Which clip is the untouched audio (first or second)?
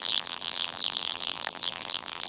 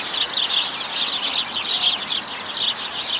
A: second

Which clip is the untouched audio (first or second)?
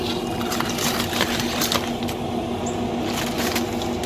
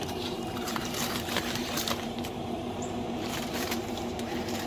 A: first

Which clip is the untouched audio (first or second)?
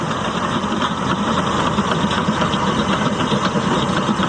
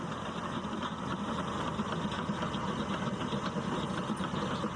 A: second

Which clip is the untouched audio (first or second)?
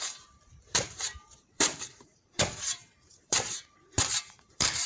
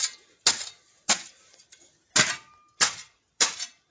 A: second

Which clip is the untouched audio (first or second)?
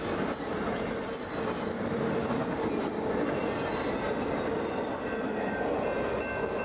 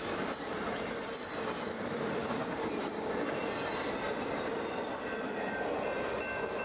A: first